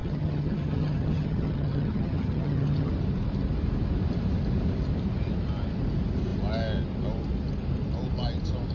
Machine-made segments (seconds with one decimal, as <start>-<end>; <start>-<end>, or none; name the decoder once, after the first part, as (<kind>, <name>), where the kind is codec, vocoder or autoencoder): 0.0-2.9 (vocoder, HiFi-GAN)